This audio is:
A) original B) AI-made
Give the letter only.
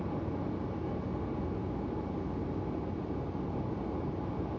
A